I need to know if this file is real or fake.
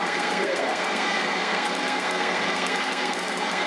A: fake